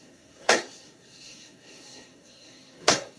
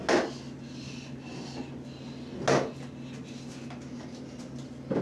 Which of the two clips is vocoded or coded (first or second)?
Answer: first